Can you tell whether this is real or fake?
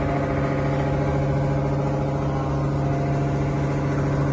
real